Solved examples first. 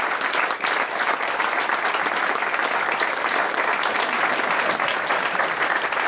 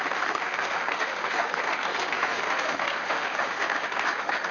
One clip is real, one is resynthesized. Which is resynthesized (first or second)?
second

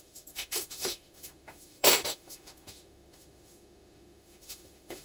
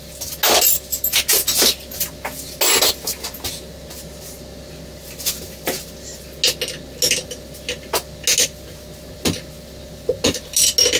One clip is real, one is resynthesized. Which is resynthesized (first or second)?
first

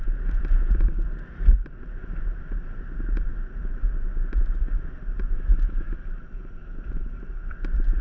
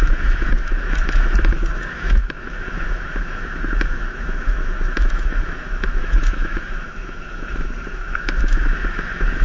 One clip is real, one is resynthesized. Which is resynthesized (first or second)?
second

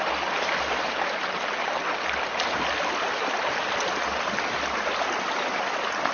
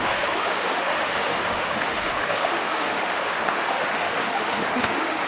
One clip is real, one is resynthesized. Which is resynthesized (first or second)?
second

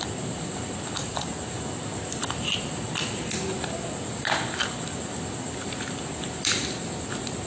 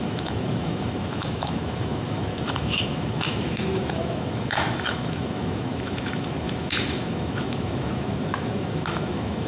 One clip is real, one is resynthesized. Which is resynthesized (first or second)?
second